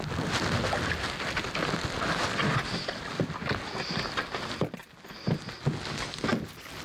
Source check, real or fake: real